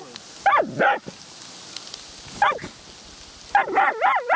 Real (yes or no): yes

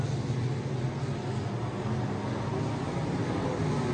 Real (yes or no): yes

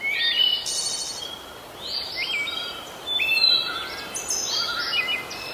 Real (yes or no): yes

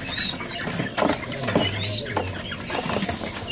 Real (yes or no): yes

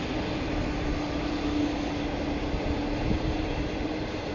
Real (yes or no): yes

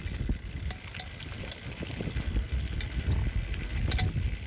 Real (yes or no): yes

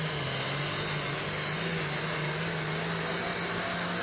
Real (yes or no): yes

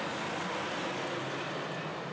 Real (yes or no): yes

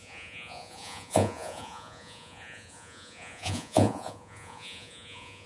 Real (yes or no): no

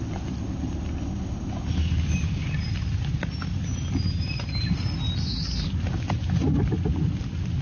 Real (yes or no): yes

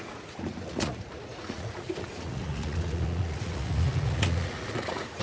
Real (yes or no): no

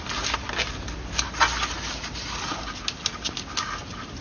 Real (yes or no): yes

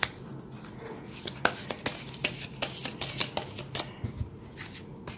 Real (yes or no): yes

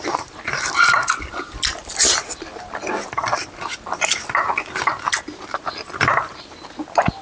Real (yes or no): yes